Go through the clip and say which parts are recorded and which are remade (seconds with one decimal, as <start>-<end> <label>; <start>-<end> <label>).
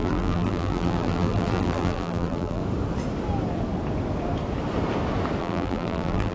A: 0.0-2.6 remade; 2.6-5.4 recorded; 5.4-6.3 remade